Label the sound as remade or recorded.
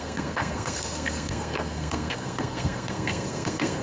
remade